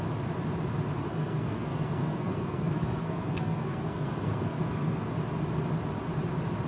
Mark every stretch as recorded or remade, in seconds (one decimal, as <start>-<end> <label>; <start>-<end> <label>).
0.0-1.1 recorded; 1.1-5.1 remade; 5.1-6.7 recorded